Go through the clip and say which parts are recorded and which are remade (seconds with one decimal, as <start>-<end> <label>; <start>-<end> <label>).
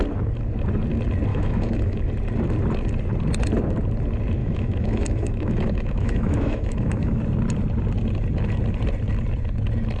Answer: 0.0-1.3 recorded; 1.3-2.0 remade; 2.0-4.4 recorded; 4.4-7.2 remade; 7.2-10.0 recorded